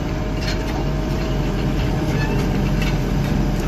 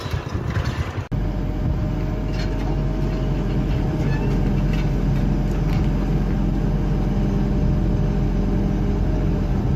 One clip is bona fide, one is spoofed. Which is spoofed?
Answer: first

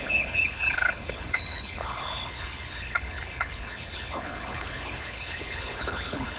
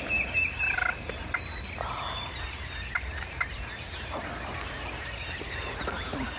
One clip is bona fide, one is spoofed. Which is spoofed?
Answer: first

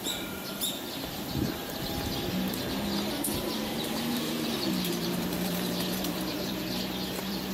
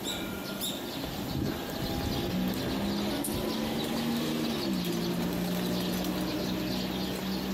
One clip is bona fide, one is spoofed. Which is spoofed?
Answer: first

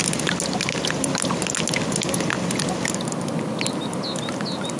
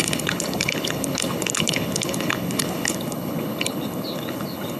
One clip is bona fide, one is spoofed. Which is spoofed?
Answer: second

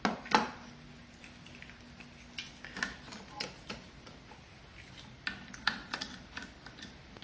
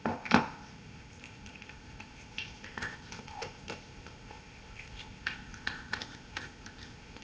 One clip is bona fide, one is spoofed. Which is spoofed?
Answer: second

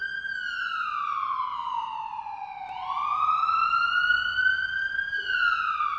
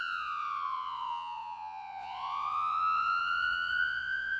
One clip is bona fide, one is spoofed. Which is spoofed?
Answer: second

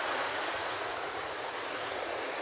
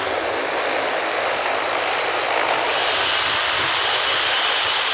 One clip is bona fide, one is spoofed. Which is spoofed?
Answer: first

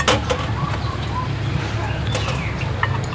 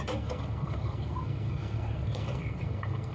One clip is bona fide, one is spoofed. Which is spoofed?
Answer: second